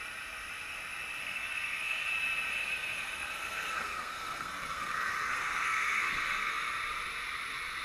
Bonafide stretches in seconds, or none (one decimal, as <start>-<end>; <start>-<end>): 0.0-1.2; 2.1-2.5; 6.5-7.8